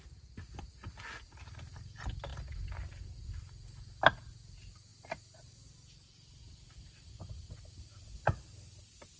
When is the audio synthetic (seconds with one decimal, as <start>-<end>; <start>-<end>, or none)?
none